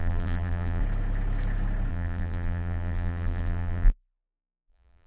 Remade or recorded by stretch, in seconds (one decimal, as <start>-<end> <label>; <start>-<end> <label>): 0.0-0.8 remade; 0.8-1.9 recorded; 1.9-5.1 remade